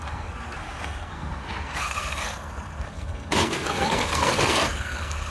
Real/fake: fake